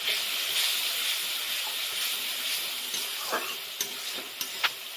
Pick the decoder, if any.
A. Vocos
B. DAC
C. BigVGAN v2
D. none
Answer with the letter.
D